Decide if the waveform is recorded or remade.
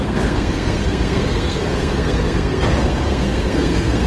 remade